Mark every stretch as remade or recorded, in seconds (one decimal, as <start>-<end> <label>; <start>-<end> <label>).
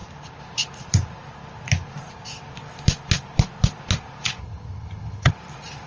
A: 0.0-4.4 recorded; 4.4-5.3 remade; 5.3-5.9 recorded